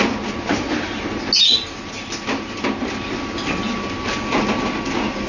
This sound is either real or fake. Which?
real